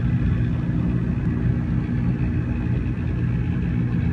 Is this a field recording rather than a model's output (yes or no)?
yes